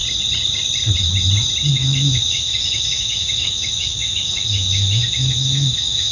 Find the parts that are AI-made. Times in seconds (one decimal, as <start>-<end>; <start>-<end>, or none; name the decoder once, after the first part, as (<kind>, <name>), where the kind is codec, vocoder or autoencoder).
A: 1.7-6.1 (autoencoder, DAC-VAE)